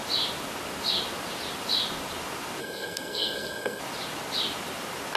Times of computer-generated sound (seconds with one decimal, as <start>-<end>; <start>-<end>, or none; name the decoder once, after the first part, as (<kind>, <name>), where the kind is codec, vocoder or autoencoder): 2.6-3.8 (codec, SNAC)